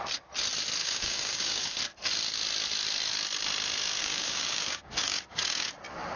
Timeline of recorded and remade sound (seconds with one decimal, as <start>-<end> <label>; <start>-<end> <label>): 0.0-0.8 recorded; 0.8-1.8 remade; 1.8-4.0 recorded; 4.0-5.7 remade; 5.7-6.2 recorded